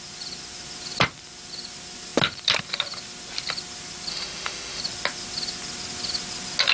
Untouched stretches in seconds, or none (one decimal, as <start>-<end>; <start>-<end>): 0.0-4.1; 4.8-6.7